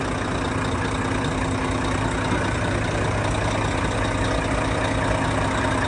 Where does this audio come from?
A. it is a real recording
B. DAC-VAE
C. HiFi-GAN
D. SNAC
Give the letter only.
A